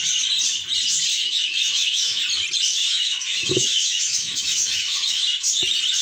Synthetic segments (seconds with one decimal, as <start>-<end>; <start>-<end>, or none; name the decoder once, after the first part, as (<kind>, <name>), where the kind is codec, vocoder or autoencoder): 1.1-2.2 (autoencoder, DAC-VAE); 2.7-5.4